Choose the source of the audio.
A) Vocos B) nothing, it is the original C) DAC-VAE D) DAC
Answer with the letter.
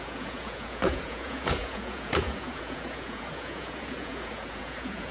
A